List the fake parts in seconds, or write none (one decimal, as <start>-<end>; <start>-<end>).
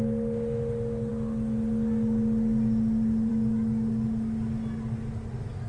none